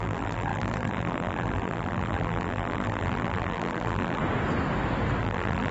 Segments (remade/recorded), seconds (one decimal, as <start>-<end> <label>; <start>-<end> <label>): 0.0-4.2 remade; 4.2-5.2 recorded; 5.2-5.7 remade